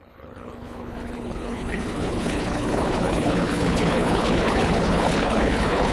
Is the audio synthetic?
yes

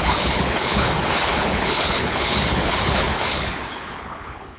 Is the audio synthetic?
yes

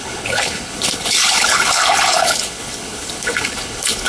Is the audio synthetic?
yes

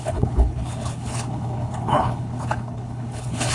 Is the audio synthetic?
yes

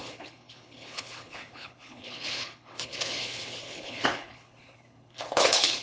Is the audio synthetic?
yes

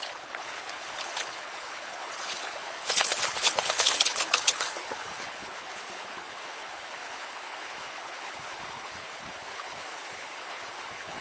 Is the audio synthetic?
yes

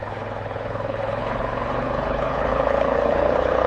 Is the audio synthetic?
yes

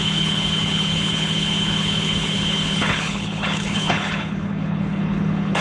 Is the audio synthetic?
yes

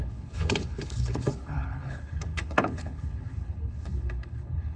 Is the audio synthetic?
yes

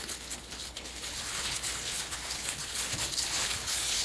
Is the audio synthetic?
yes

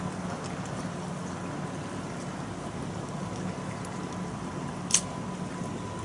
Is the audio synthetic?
no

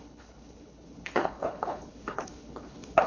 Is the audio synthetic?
yes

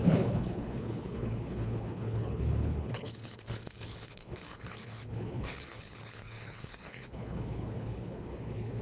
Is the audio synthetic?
yes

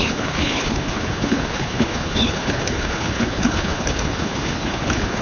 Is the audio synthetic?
yes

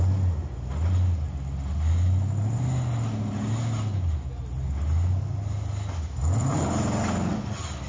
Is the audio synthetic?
no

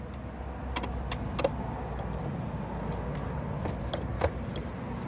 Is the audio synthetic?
no